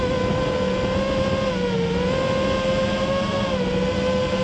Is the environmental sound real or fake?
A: real